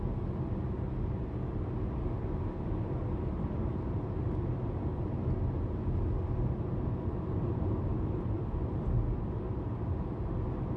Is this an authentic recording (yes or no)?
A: yes